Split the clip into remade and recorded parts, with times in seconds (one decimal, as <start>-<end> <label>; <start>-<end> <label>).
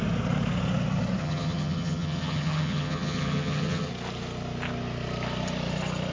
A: 0.0-1.2 recorded; 1.2-3.9 remade; 3.9-6.1 recorded